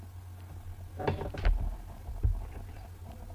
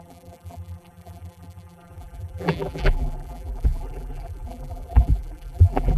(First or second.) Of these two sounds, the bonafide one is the first